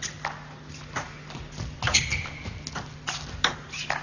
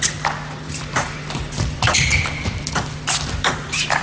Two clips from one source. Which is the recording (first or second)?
first